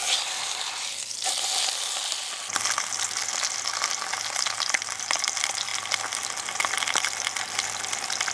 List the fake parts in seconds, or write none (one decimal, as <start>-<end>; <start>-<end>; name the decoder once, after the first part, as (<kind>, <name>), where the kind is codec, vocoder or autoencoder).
none

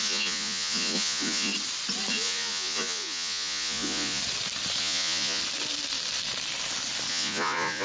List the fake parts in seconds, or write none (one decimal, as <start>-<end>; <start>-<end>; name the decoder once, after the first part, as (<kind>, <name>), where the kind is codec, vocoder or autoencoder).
0.0-1.5 (vocoder, Vocos); 2.1-4.2; 4.8-5.4; 7.1-7.8

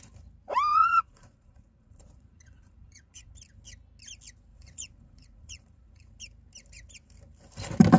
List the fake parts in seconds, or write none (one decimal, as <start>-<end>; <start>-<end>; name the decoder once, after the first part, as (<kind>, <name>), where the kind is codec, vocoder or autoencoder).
0.7-3.3 (vocoder, Vocos); 4.5-6.1

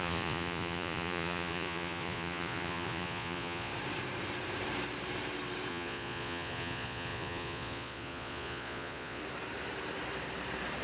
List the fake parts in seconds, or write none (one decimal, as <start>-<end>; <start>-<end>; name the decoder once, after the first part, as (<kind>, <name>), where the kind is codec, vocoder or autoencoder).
0.0-3.7 (vocoder, Vocos); 5.7-9.2

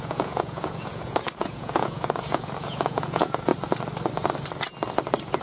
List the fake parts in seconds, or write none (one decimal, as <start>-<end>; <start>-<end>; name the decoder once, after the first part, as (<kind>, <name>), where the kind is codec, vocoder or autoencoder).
0.0-3.5 (vocoder, Vocos)

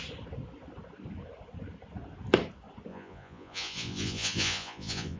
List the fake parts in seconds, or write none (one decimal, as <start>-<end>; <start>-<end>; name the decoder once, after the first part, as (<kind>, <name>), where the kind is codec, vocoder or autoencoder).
2.9-5.2 (vocoder, Vocos)